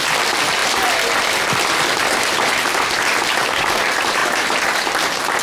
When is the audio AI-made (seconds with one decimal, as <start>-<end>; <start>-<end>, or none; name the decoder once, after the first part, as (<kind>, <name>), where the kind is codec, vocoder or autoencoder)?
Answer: none